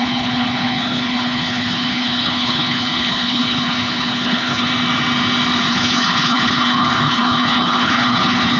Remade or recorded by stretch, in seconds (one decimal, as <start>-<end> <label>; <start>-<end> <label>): 0.0-4.7 remade; 4.7-5.7 recorded; 5.7-8.6 remade